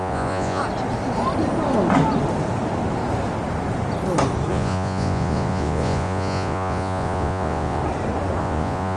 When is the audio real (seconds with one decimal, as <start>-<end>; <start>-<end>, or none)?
0.6-4.5; 7.8-8.4